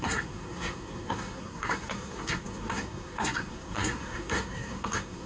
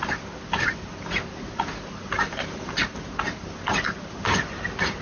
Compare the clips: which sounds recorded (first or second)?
second